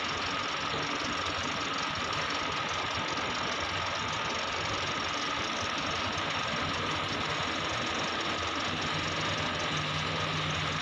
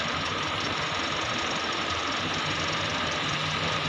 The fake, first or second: second